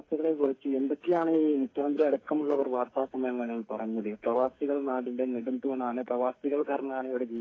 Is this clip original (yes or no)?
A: no